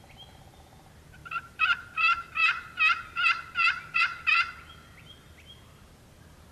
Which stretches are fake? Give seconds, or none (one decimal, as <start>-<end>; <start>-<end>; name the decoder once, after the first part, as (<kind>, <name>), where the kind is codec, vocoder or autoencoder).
none